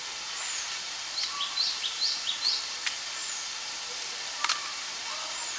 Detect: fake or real fake